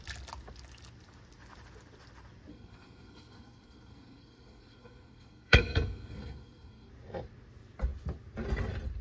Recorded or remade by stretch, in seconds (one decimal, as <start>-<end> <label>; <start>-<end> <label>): 0.0-2.5 recorded; 2.5-6.9 remade; 6.9-9.0 recorded